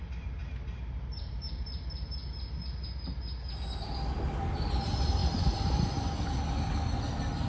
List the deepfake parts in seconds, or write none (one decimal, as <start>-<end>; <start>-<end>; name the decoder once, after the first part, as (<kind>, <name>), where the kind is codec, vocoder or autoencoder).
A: 0.0-0.4 (vocoder, BigVGAN v2); 1.2-2.2; 3.8-7.5